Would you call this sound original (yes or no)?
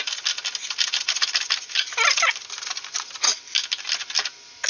yes